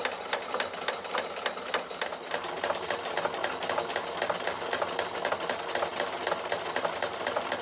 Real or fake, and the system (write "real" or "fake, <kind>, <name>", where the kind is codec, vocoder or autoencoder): real